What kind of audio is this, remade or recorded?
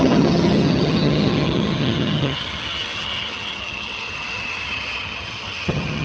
remade